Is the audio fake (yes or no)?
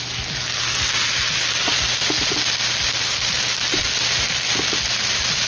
no